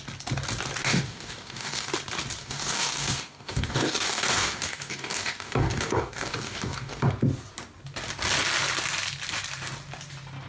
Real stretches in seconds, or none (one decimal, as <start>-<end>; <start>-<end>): 0.0-0.8; 1.9-2.4; 7.0-10.5